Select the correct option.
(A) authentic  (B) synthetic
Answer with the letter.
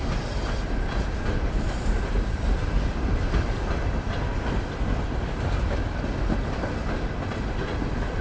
A